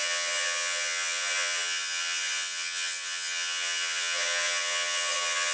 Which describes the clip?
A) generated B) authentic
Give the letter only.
A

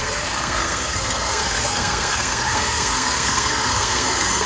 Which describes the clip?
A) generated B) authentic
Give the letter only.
A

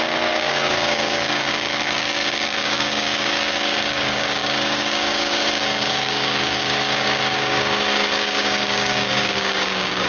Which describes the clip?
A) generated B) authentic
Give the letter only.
A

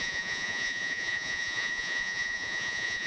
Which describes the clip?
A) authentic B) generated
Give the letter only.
B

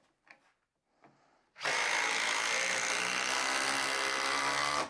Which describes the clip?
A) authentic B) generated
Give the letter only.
A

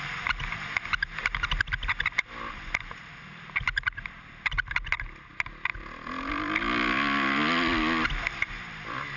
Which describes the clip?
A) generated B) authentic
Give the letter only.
B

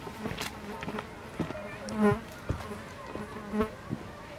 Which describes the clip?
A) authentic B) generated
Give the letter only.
A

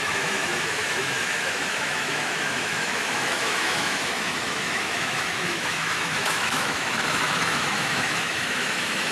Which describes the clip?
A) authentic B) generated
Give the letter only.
B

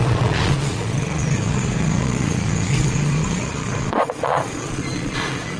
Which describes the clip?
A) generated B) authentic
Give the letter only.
A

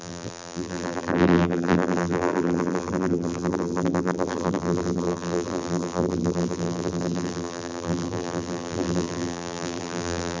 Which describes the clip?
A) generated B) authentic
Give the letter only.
A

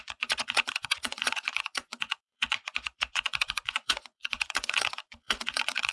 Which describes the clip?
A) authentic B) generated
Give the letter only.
B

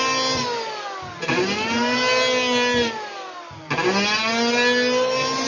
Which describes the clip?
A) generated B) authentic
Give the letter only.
B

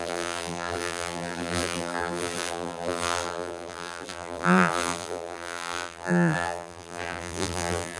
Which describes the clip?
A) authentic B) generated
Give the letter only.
B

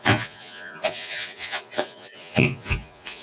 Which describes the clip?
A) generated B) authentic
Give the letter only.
A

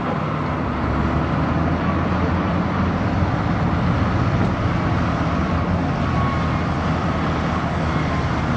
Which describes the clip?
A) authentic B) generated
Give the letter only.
A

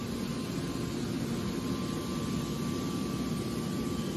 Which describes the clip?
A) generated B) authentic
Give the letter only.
B